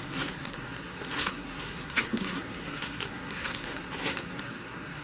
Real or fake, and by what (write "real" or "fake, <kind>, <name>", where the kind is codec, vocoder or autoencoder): fake, codec, SNAC